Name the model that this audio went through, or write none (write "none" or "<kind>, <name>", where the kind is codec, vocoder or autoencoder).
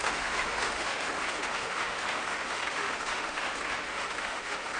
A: autoencoder, DAC-VAE